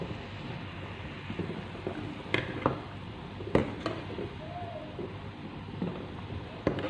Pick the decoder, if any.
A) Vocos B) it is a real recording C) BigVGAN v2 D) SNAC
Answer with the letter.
B